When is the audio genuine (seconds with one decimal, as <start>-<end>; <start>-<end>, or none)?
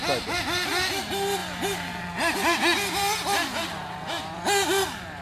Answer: 0.0-1.4; 2.6-5.2